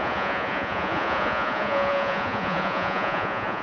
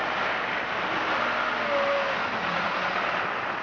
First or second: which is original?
second